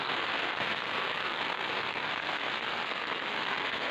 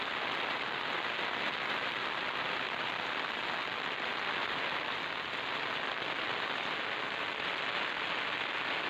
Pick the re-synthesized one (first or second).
first